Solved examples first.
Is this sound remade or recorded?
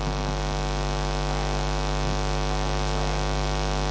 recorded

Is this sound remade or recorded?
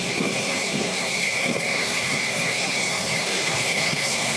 remade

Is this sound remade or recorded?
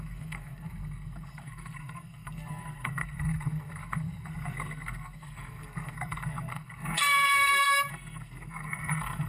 remade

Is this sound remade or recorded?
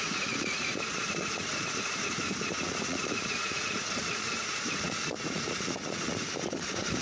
remade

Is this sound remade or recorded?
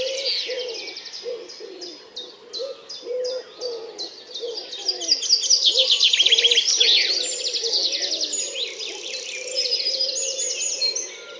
recorded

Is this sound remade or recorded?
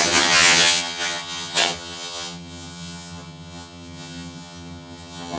remade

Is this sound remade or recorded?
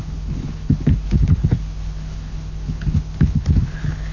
remade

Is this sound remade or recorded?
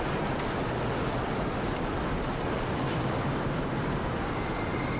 recorded